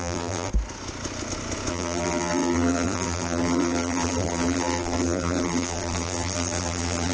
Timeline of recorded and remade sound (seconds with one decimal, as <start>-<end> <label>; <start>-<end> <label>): 0.0-0.5 remade; 0.5-1.7 recorded; 1.7-7.1 remade